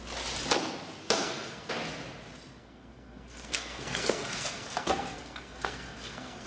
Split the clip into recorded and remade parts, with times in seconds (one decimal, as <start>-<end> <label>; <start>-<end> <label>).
0.0-1.0 recorded; 1.0-1.7 remade; 1.7-2.6 recorded; 2.6-6.5 remade